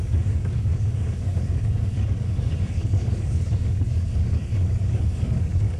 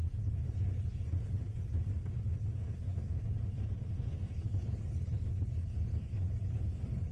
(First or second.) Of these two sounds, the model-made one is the first